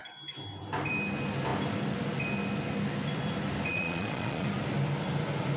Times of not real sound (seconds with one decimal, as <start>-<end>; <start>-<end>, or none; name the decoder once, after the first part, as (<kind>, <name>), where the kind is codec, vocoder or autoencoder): 3.7-4.5 (vocoder, Vocos)